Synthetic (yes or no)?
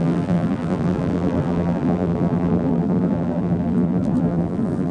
yes